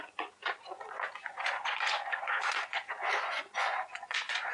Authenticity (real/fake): fake